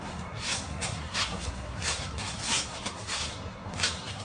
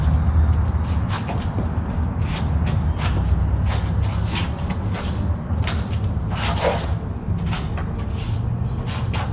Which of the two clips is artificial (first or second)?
first